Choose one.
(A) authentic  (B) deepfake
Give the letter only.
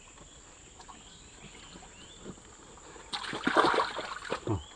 A